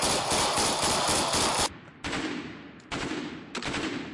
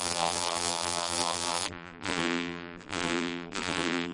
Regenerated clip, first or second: second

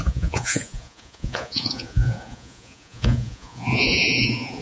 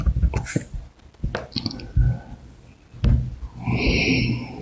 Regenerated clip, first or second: first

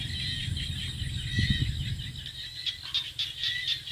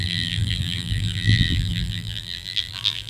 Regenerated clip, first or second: second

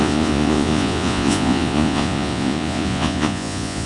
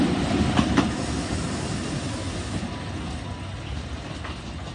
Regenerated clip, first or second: first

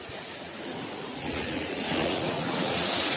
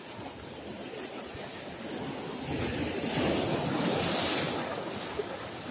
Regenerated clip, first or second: first